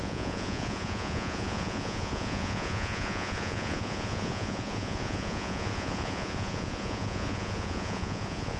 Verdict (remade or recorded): remade